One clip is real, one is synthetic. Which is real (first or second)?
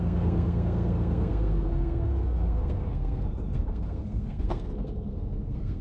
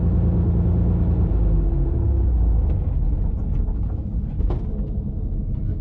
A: second